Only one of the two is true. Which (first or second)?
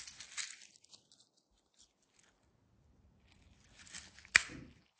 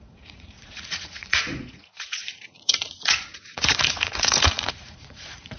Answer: first